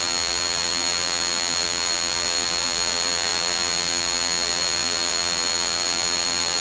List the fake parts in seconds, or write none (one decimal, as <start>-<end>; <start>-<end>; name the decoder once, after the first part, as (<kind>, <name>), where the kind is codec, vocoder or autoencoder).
0.0-6.6 (vocoder, BigVGAN v2)